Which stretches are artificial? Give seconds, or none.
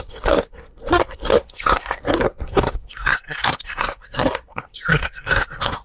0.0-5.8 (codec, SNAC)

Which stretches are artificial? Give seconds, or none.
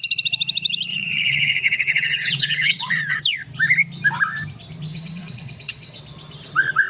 0.9-3.2 (vocoder, WaveNeXt); 4.9-6.0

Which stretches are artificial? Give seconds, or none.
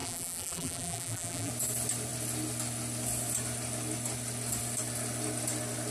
0.0-1.5 (vocoder, BigVGAN v2)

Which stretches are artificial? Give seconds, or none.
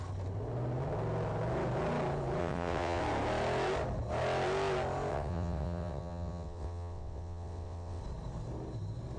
2.4-3.0 (vocoder, WaveNeXt); 5.1-8.0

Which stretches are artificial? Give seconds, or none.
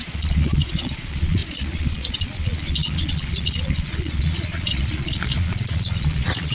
0.0-6.5 (vocoder, Vocos)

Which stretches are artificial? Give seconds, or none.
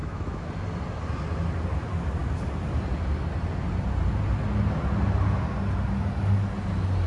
0.0-0.5 (autoencoder, DAC-VAE)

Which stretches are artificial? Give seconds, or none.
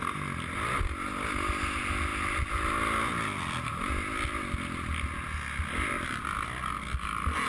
none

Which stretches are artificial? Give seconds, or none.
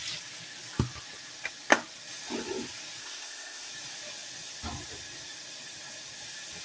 3.0-3.7 (codec, ZipCodec)